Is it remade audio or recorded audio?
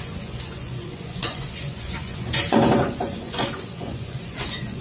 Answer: remade